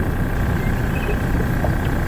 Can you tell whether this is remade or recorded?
recorded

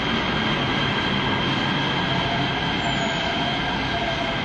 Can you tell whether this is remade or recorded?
recorded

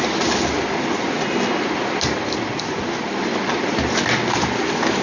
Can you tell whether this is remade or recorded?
recorded